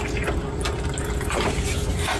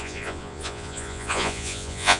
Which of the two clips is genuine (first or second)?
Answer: first